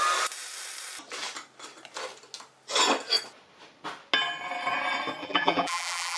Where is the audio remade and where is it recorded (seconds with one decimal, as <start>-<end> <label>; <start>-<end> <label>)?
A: 0.0-5.2 recorded; 5.2-6.2 remade

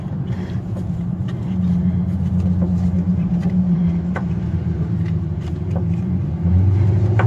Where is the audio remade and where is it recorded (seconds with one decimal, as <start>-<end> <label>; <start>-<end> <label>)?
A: 0.0-2.0 remade; 2.0-3.1 recorded; 3.1-5.8 remade; 5.8-7.3 recorded

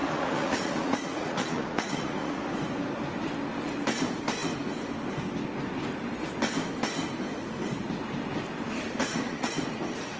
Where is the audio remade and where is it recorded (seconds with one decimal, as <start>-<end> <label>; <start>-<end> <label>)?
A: 0.0-2.4 remade; 2.4-9.0 recorded; 9.0-9.5 remade; 9.5-10.2 recorded

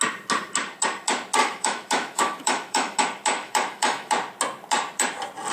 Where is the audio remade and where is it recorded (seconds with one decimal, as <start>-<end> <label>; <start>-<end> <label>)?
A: 0.0-1.4 recorded; 1.4-3.0 remade; 3.0-3.4 recorded; 3.4-4.1 remade; 4.1-5.5 recorded

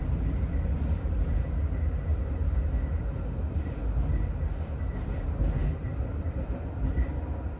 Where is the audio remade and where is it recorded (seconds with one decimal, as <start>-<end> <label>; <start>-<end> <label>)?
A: 0.0-7.6 recorded

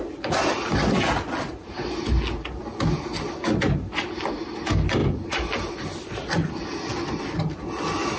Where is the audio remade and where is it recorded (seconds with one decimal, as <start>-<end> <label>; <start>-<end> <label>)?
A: 0.0-8.2 recorded

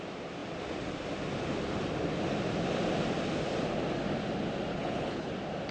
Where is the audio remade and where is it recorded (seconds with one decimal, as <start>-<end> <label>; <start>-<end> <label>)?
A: 0.0-4.7 recorded; 4.7-5.3 remade; 5.3-5.7 recorded

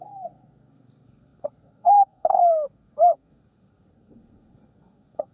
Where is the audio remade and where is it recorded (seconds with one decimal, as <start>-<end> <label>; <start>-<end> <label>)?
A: 0.0-5.3 remade